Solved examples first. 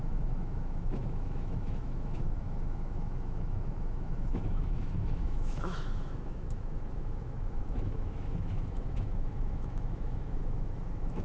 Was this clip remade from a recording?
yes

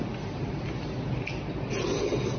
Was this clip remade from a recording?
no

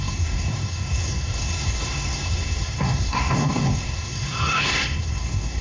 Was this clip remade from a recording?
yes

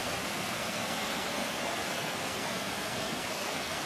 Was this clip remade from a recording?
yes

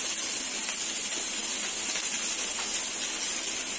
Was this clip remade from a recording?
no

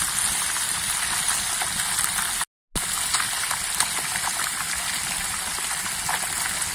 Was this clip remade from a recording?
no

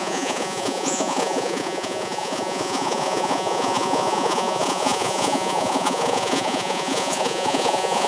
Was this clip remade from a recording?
yes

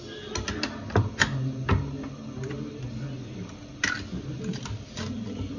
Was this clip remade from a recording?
no